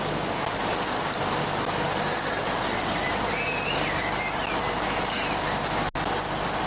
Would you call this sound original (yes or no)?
yes